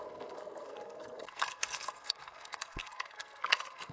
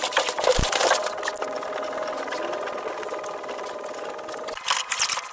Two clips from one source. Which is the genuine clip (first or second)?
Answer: second